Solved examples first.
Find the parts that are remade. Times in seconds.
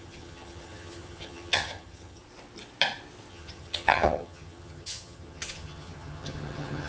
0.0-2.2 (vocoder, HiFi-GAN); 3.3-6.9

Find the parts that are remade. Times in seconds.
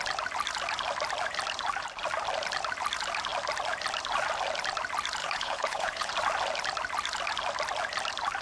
5.2-6.1 (codec, HILCodec)